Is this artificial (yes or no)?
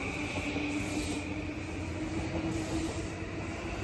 no